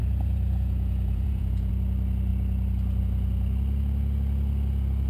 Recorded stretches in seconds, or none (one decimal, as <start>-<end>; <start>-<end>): 1.7-5.1